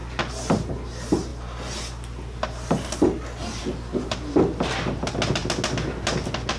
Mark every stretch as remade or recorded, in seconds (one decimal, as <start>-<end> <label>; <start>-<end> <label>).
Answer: 0.0-6.6 recorded